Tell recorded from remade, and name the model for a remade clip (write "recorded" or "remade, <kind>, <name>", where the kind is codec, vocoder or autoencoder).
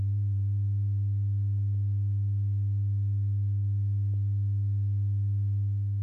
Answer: recorded